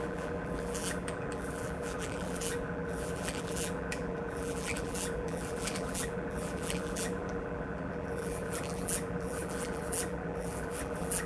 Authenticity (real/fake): fake